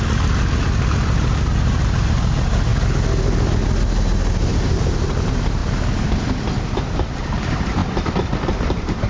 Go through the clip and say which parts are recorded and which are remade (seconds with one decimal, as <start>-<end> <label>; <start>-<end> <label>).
0.0-2.7 remade; 2.7-4.5 recorded; 4.5-5.6 remade; 5.6-7.2 recorded; 7.2-7.8 remade; 7.8-9.1 recorded